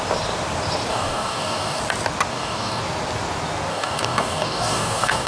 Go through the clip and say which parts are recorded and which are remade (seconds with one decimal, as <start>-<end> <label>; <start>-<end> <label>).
0.0-0.9 recorded; 0.9-1.8 remade; 1.8-2.3 recorded; 2.3-2.8 remade; 2.8-3.7 recorded; 3.7-5.3 remade